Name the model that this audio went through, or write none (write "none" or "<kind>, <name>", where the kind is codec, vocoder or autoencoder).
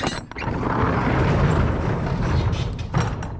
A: none